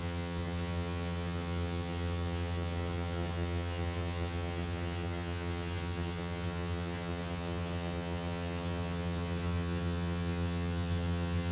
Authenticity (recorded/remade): remade